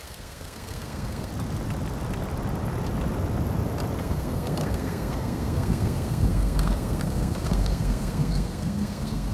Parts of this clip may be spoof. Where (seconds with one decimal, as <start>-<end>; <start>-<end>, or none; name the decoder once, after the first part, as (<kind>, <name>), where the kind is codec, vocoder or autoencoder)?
0.0-1.3 (codec, SNAC); 4.0-9.3